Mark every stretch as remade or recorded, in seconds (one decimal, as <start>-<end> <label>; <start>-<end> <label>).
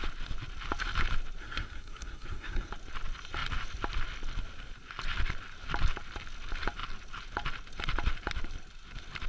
0.0-1.4 recorded; 1.4-2.7 remade; 2.7-9.3 recorded